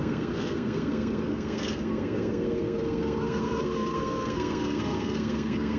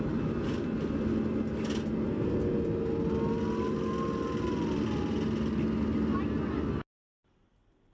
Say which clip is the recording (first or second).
second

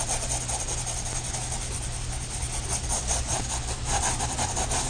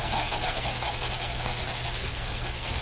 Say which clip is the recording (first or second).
first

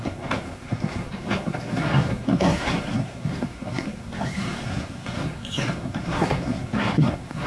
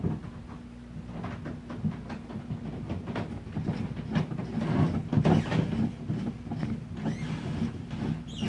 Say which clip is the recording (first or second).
second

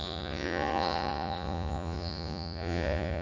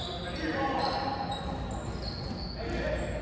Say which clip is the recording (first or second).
second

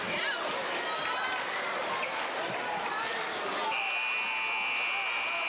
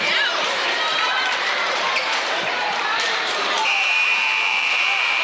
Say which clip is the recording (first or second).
first